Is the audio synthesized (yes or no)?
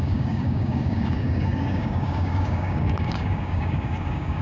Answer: yes